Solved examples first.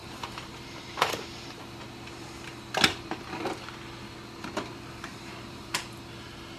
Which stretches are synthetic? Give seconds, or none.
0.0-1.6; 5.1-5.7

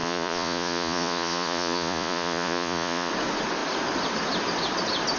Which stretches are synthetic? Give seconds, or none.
0.0-3.1

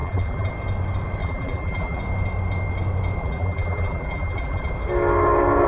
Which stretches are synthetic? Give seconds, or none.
0.0-0.5; 1.2-2.0; 3.2-4.7

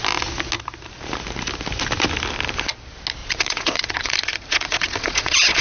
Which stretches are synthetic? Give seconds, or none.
3.2-5.6